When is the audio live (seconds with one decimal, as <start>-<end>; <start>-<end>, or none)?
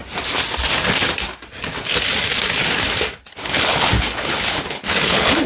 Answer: 0.0-3.3